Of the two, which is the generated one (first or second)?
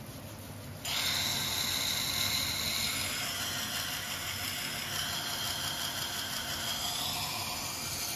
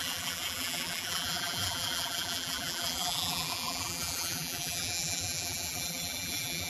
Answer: second